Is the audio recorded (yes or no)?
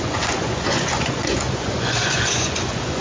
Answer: no